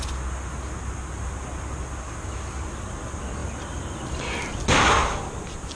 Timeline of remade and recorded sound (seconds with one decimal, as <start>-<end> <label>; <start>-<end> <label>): 0.0-5.8 recorded